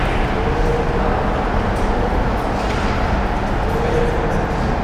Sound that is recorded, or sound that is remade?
recorded